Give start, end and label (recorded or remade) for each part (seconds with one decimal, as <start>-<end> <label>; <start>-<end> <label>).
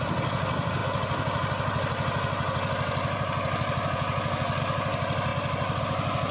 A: 0.0-6.3 recorded